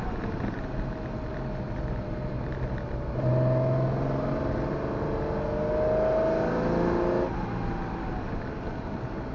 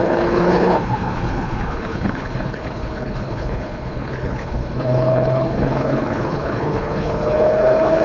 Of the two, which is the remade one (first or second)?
second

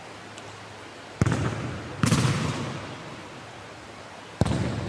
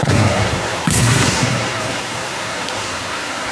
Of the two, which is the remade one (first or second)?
second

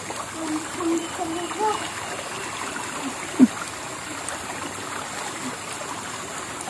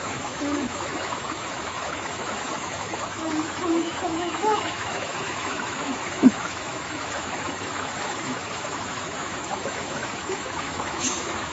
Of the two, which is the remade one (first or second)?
second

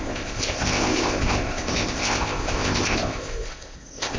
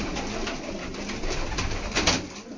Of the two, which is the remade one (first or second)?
first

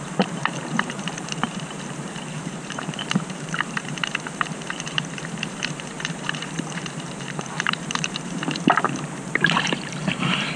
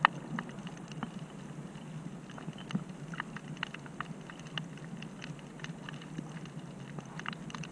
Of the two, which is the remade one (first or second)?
first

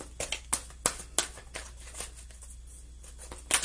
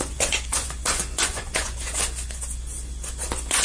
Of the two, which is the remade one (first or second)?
second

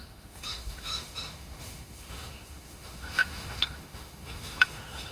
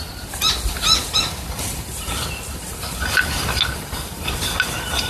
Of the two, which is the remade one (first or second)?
first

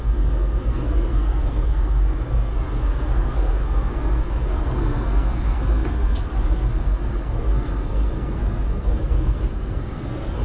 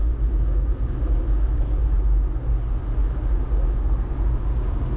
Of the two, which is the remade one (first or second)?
first